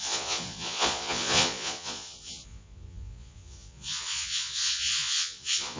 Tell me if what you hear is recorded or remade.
remade